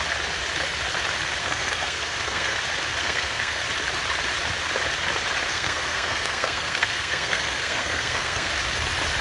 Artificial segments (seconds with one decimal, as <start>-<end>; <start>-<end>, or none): 1.4-2.6; 3.0-3.6; 5.5-8.5